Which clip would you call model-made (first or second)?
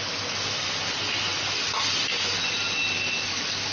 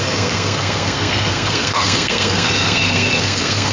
second